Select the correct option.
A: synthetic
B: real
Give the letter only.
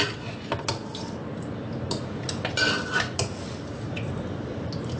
B